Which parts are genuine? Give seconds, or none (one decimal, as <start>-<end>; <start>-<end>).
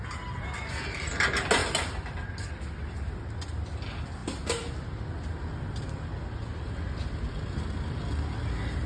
0.0-8.9